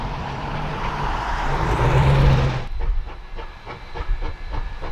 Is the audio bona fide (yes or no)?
no